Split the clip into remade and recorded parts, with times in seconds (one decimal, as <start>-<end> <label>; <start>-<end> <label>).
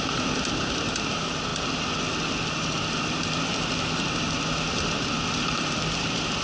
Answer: 0.0-1.5 remade; 1.5-2.9 recorded; 2.9-6.4 remade